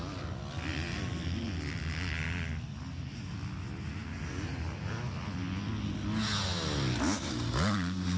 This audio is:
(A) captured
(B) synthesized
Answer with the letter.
A